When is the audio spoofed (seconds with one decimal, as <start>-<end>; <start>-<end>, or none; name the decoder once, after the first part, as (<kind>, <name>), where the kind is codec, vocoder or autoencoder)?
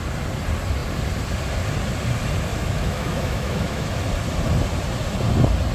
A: 2.5-4.0 (autoencoder, DAC-VAE)